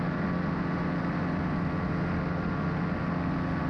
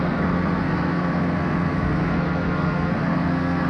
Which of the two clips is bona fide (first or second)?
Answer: first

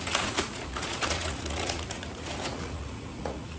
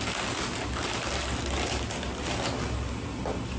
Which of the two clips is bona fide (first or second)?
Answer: second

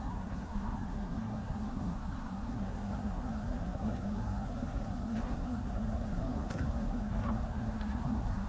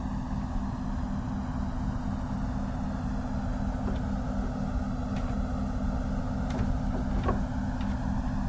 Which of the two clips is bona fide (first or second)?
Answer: second